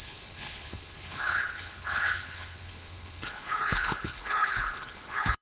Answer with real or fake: fake